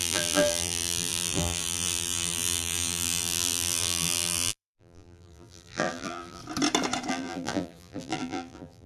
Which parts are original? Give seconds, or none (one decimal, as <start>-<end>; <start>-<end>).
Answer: 6.4-7.1